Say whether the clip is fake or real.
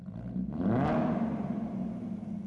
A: real